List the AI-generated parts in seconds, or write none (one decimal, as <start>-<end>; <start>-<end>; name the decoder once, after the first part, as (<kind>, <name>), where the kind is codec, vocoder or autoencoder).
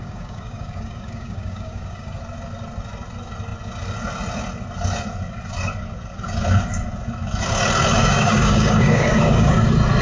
0.0-2.2 (codec, DAC); 8.0-9.5